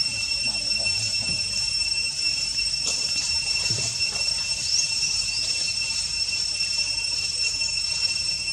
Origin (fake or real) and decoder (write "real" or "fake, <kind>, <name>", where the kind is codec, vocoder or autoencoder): fake, vocoder, BigVGAN v2